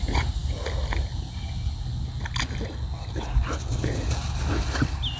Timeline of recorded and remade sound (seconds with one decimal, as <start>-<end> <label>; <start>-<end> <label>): 0.0-5.2 recorded